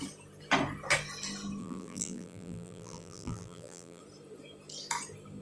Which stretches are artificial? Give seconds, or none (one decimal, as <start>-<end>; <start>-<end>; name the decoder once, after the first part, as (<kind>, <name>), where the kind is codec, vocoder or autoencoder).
1.6-4.0 (vocoder, BigVGAN v2)